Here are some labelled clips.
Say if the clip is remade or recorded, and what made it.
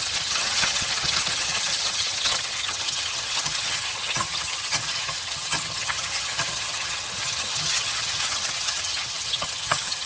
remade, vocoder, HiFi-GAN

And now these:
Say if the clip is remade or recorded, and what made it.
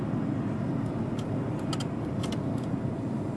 recorded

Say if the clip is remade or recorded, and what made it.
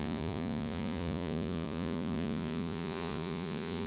remade, vocoder, Vocos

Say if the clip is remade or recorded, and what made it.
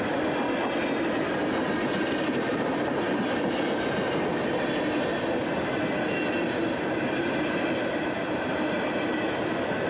recorded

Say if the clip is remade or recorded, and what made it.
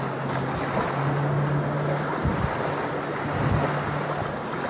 recorded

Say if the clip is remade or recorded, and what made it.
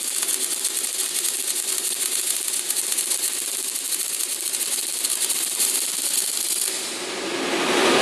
recorded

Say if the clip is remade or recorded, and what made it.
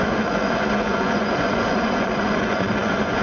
remade, vocoder, Vocos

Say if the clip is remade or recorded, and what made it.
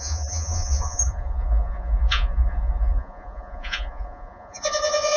remade, vocoder, Vocos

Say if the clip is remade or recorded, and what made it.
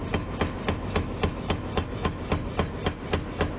recorded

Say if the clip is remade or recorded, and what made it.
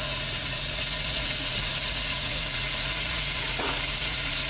remade, vocoder, Vocos